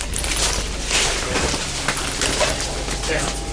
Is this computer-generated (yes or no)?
no